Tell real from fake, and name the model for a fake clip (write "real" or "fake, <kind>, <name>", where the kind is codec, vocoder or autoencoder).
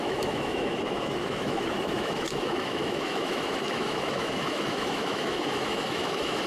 fake, autoencoder, DAC-VAE